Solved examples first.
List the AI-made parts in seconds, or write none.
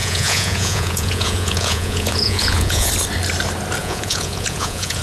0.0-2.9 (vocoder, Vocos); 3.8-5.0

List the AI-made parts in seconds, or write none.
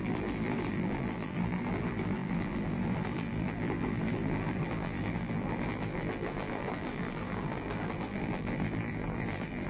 0.0-9.7 (vocoder, BigVGAN v2)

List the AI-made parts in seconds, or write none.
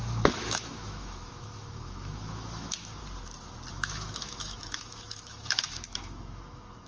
0.0-3.0 (autoencoder, DAC-VAE); 3.7-6.9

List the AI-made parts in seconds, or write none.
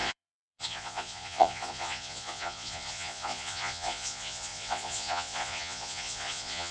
0.0-6.7 (vocoder, Vocos)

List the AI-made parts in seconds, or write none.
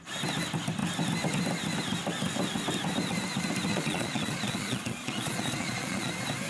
3.7-6.1 (vocoder, Vocos)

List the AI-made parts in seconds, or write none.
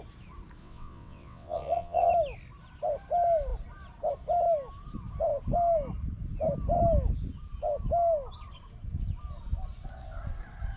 0.6-2.1 (vocoder, WaveNeXt)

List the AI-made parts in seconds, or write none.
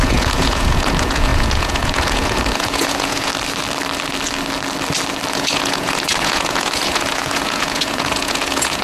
0.0-3.3 (vocoder, Vocos); 5.3-8.8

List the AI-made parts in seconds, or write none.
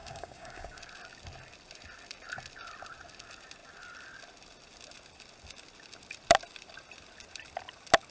0.0-0.8 (codec, DAC)